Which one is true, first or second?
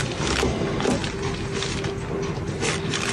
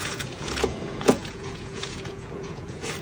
first